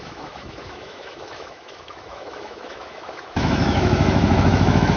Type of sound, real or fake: fake